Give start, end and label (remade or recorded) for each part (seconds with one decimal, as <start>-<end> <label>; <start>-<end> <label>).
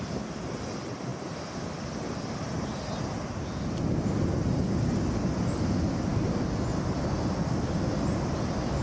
0.0-8.8 recorded